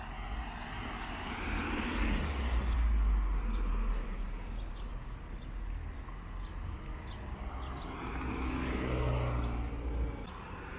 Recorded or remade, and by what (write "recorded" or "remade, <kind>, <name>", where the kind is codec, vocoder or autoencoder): recorded